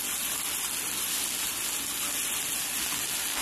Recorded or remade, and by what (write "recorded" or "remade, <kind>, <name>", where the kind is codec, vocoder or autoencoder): recorded